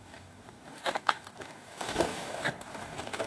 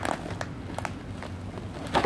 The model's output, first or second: first